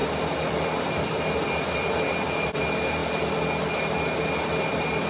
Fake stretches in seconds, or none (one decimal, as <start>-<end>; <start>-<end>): 0.0-2.6